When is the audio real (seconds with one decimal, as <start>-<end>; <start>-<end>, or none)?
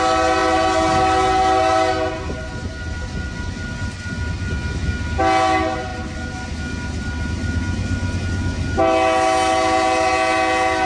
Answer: 0.0-10.9